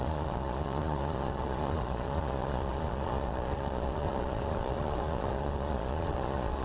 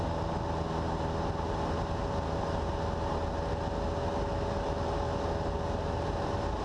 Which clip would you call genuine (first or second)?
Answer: second